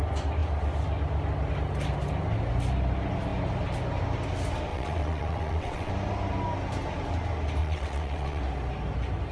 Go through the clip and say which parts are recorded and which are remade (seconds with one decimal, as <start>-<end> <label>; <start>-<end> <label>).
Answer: 0.0-4.7 recorded; 4.7-5.9 remade; 5.9-7.6 recorded; 7.6-8.4 remade; 8.4-9.3 recorded

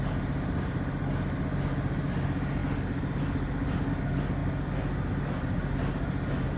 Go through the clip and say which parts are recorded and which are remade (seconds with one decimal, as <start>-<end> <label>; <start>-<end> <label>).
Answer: 0.0-6.6 recorded

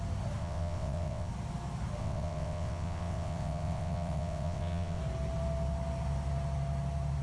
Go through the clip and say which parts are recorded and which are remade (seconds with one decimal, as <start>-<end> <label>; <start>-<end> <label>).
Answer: 0.0-0.4 recorded; 0.4-1.3 remade; 1.3-2.0 recorded; 2.0-5.0 remade; 5.0-7.2 recorded

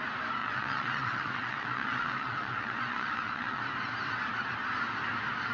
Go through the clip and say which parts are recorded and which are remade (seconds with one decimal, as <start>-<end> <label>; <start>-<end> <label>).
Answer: 0.0-0.4 recorded; 0.4-3.6 remade; 3.6-5.5 recorded

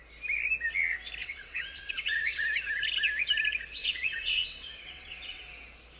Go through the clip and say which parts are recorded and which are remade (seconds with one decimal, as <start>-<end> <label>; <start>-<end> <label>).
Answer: 0.0-1.2 recorded; 1.2-2.4 remade; 2.4-3.8 recorded; 3.8-5.4 remade; 5.4-6.0 recorded

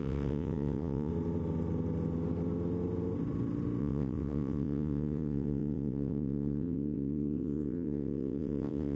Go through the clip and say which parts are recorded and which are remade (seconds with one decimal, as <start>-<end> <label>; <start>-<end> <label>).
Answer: 0.0-1.1 remade; 1.1-3.8 recorded; 3.8-9.0 remade

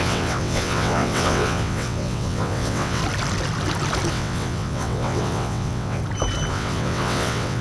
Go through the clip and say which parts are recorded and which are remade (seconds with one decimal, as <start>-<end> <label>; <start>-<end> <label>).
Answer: 0.0-3.0 remade; 3.0-4.1 recorded; 4.1-6.0 remade; 6.0-6.5 recorded; 6.5-7.6 remade